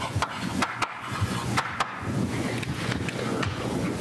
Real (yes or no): no